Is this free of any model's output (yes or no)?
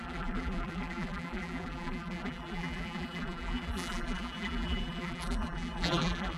no